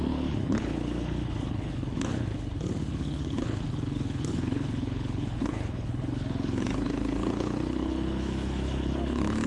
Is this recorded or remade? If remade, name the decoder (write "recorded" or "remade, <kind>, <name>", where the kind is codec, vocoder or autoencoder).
remade, codec, HILCodec